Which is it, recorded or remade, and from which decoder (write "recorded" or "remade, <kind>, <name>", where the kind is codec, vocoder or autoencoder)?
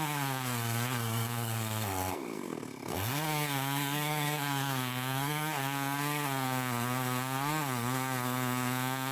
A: remade, codec, SNAC